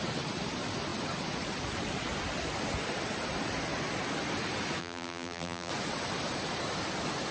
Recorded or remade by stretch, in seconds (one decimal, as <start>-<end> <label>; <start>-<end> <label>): 0.0-4.8 recorded; 4.8-5.7 remade; 5.7-7.3 recorded